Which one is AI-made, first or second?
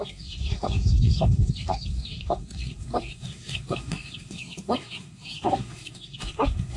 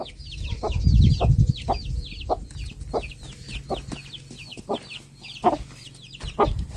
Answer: first